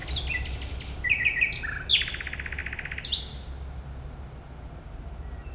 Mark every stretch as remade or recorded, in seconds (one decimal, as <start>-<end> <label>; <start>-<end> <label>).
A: 0.0-5.5 recorded